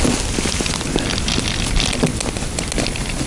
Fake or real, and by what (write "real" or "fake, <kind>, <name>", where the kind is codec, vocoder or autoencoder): real